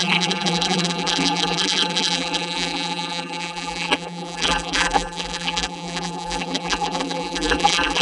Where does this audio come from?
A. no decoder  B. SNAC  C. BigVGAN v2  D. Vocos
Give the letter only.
C